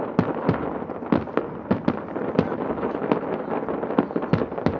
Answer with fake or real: real